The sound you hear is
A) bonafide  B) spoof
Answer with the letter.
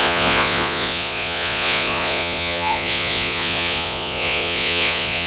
B